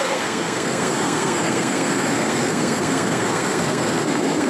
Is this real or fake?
fake